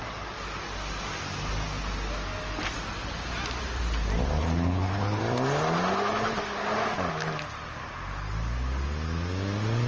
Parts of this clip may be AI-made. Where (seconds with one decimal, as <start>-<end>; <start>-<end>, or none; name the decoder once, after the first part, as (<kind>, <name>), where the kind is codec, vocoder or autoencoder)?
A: 4.4-5.2 (codec, HILCodec)